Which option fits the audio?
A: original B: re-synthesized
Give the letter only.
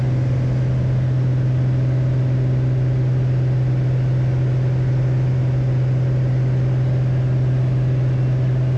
A